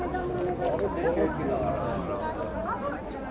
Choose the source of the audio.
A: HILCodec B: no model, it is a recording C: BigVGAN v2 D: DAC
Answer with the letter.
B